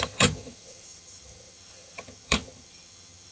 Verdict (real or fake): fake